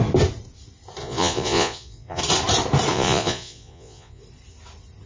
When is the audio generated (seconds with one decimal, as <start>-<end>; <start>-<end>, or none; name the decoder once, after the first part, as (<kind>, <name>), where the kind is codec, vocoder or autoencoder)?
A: 1.0-2.2 (vocoder, Vocos); 2.9-4.2